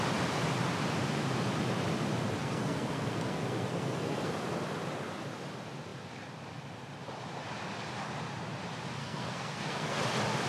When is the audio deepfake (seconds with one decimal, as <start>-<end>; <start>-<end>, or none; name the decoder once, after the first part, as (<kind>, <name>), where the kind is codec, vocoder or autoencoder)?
2.4-4.3 (codec, SNAC); 9.0-10.0